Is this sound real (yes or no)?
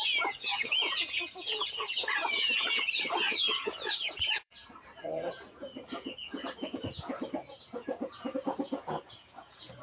no